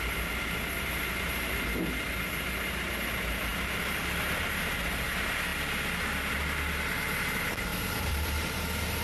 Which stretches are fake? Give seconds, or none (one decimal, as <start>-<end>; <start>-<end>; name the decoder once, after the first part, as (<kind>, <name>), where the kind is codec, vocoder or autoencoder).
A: 7.7-8.5 (vocoder, BigVGAN v2)

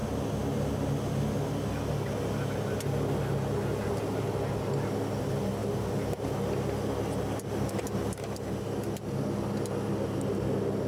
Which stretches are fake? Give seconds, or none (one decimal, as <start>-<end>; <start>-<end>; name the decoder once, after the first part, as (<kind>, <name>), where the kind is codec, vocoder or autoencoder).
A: none

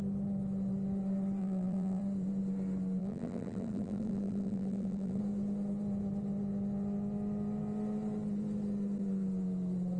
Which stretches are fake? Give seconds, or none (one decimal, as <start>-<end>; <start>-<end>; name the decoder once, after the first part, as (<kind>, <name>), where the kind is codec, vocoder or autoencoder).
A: 1.4-2.0 (vocoder, BigVGAN v2); 3.0-5.2

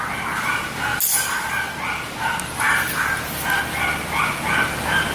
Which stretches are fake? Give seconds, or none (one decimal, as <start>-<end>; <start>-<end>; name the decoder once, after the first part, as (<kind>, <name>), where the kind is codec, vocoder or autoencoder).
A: none

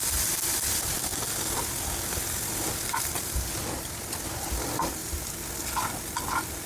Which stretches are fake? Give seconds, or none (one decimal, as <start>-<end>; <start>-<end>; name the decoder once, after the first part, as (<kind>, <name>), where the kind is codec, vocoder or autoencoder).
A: 0.0-1.1 (vocoder, BigVGAN v2); 2.8-5.0; 6.0-6.7